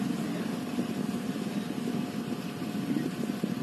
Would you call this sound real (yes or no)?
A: yes